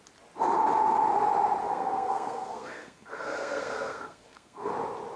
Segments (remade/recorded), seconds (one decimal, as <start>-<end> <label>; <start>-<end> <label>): 0.0-1.6 recorded; 1.6-4.7 remade; 4.7-5.2 recorded